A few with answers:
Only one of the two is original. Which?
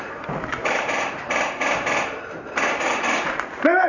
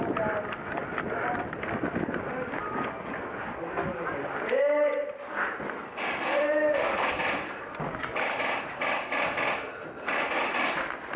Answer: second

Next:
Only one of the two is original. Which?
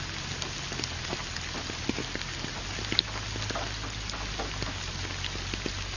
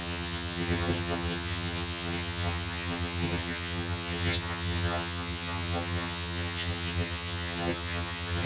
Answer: first